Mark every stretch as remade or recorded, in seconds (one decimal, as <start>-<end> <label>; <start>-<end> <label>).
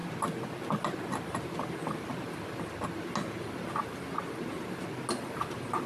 0.0-5.9 recorded